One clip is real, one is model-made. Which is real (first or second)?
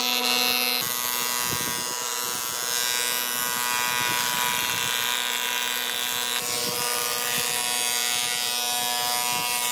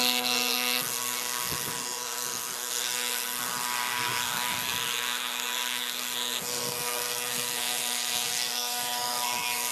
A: first